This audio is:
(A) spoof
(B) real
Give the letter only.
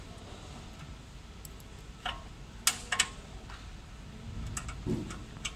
B